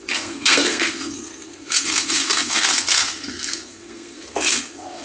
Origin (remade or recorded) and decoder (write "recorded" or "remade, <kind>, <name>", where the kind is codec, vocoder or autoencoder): remade, codec, SNAC